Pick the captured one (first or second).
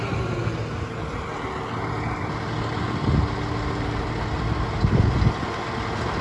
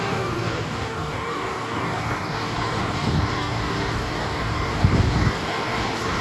first